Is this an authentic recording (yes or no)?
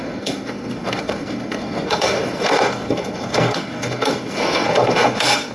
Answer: no